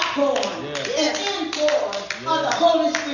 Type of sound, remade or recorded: recorded